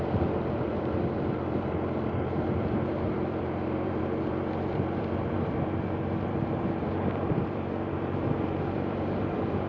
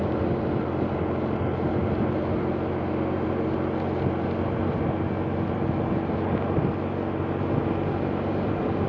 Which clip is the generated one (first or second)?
first